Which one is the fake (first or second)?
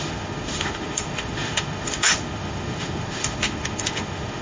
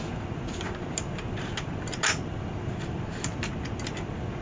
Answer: first